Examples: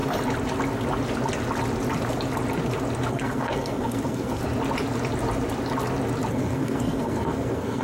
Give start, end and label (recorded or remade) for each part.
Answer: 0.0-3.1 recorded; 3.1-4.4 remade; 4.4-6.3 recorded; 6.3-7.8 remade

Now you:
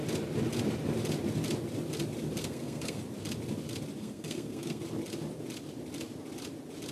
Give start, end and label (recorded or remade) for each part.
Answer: 0.0-2.4 recorded; 2.4-3.0 remade; 3.0-4.0 recorded; 4.0-4.8 remade; 4.8-6.9 recorded